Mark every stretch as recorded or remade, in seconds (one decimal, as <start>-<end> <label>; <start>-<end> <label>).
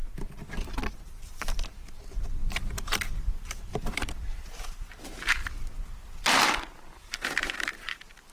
0.0-2.5 recorded; 2.5-3.7 remade; 3.7-4.5 recorded; 4.5-5.4 remade; 5.4-6.2 recorded; 6.2-8.3 remade